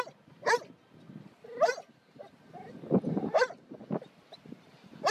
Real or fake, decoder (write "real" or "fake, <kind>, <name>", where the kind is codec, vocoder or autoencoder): real